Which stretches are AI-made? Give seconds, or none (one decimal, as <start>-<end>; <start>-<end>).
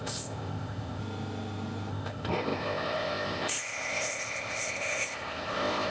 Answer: 0.0-1.0; 1.9-5.9